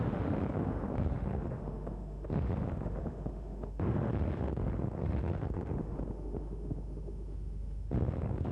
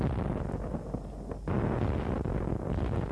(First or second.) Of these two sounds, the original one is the second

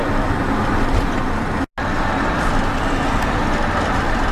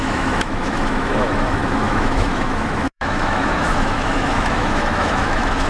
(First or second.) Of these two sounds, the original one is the first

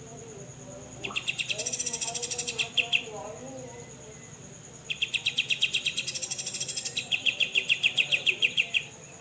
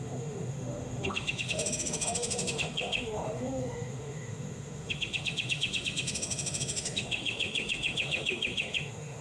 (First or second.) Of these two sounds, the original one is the first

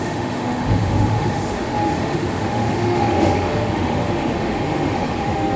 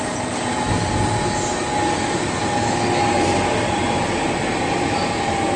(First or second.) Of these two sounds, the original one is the second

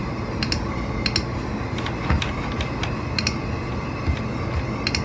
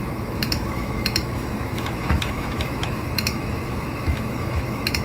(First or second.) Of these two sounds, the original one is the first